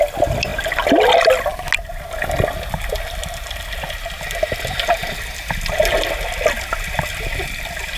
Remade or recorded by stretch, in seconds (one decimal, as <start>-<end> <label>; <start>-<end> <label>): 0.0-8.0 recorded